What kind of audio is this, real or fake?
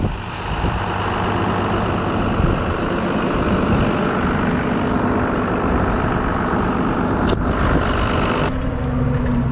real